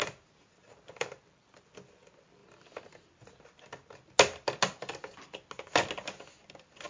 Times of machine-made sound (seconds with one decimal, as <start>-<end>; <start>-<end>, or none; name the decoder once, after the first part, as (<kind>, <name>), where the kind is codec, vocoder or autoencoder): 0.7-2.4 (vocoder, BigVGAN v2); 6.5-6.9